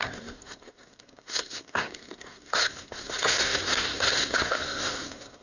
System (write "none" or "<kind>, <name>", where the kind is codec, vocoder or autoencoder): codec, SNAC